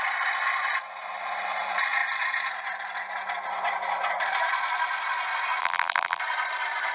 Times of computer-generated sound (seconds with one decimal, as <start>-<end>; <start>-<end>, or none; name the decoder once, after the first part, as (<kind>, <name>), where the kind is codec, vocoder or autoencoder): 5.6-6.2 (vocoder, BigVGAN v2)